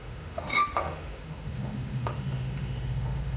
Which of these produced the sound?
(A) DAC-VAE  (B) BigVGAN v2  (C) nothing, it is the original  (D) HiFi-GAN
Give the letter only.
A